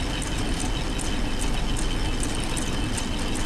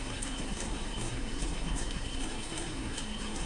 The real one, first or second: first